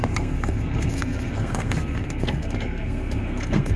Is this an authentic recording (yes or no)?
no